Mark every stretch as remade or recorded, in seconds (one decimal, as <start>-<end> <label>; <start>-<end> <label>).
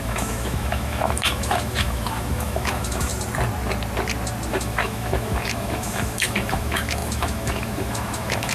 0.0-3.1 remade; 3.1-4.5 recorded; 4.5-8.5 remade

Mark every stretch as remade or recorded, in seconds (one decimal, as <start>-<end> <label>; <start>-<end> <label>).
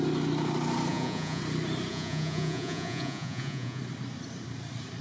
0.0-0.9 recorded; 0.9-1.4 remade; 1.4-1.9 recorded; 1.9-3.8 remade; 3.8-5.0 recorded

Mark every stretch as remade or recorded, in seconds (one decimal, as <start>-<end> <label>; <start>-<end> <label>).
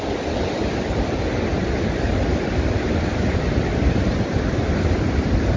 0.0-5.6 recorded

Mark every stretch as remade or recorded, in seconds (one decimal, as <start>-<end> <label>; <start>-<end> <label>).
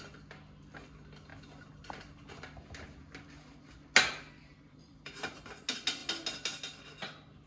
0.0-4.4 recorded; 4.4-5.3 remade; 5.3-7.5 recorded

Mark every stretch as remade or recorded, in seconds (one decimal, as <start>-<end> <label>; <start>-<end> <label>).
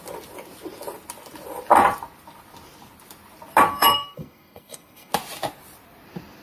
0.0-3.7 recorded; 3.7-5.1 remade; 5.1-6.4 recorded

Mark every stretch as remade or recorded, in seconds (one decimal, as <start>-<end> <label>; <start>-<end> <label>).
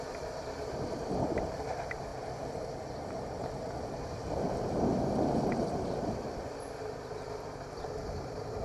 0.0-2.1 remade; 2.1-4.6 recorded; 4.6-8.6 remade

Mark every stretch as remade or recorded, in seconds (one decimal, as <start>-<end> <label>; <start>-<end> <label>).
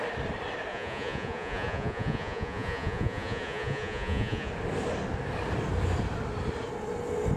0.0-0.7 recorded; 0.7-4.5 remade; 4.5-7.4 recorded